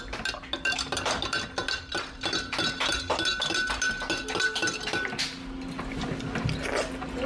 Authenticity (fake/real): real